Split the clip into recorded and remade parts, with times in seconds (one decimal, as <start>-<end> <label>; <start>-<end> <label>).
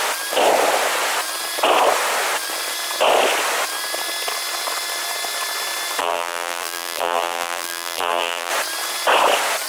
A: 0.0-6.0 recorded; 6.0-8.5 remade; 8.5-9.7 recorded